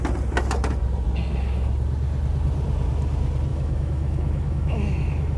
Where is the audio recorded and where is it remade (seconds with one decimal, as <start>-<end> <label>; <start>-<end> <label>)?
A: 0.0-3.5 recorded; 3.5-5.4 remade